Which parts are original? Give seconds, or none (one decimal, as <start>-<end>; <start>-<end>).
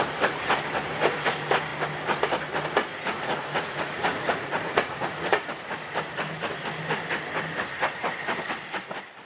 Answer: 0.0-2.9; 5.5-9.3